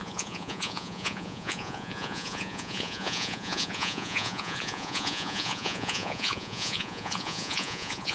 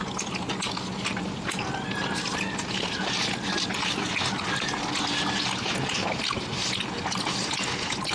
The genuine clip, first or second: second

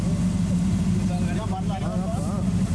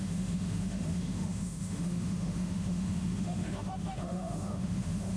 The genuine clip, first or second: first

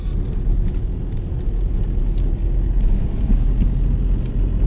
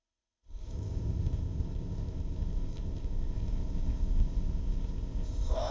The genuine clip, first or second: first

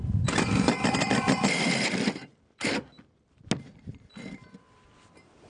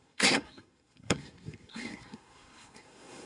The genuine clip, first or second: first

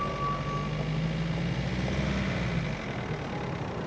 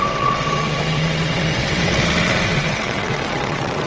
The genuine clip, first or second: first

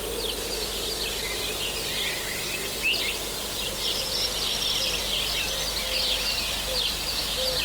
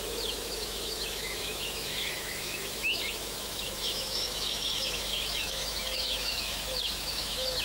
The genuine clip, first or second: first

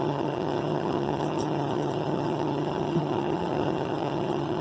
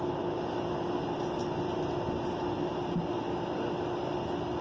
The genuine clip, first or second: second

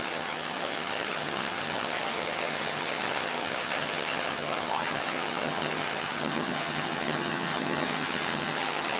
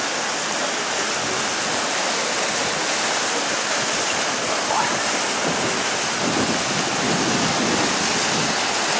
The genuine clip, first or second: second